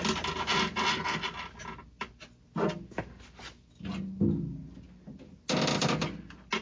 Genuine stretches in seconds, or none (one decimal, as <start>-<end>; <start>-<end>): 0.0-6.6